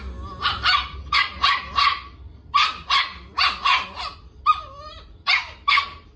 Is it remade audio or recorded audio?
recorded